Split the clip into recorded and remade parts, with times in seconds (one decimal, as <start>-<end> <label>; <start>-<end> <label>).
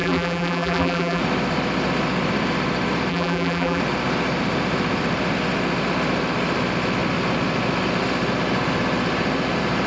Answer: 0.0-1.2 remade; 1.2-3.1 recorded; 3.1-3.8 remade; 3.8-9.9 recorded